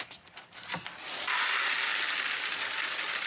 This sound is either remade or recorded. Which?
recorded